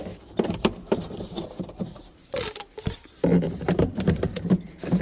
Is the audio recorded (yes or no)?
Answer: no